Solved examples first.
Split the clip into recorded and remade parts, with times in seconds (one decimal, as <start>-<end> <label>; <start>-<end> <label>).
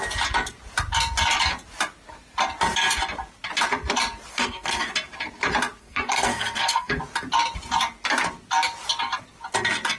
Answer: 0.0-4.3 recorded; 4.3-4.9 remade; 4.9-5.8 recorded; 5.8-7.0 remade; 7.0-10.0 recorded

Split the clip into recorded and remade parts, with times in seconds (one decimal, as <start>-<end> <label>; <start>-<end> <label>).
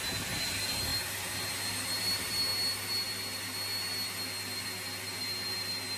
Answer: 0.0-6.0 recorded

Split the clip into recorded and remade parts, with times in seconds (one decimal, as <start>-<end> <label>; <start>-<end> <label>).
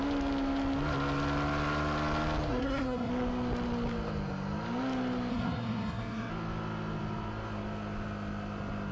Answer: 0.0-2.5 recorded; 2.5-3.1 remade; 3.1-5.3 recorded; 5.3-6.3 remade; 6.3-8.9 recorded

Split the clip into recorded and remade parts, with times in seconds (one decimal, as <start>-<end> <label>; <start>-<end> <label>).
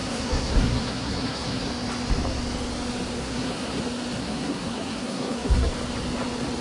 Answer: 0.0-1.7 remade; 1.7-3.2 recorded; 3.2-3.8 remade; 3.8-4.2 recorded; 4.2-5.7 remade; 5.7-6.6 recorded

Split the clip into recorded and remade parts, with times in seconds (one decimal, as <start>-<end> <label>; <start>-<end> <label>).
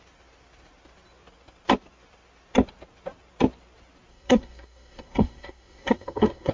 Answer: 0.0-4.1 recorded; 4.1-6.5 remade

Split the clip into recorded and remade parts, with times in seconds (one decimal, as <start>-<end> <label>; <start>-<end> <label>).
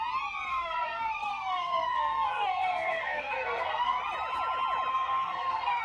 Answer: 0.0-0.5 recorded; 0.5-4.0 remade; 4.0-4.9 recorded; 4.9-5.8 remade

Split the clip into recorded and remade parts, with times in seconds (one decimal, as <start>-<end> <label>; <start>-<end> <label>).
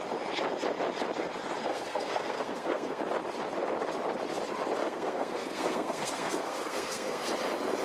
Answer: 0.0-1.7 recorded; 1.7-3.0 remade; 3.0-4.8 recorded; 4.8-7.3 remade; 7.3-7.8 recorded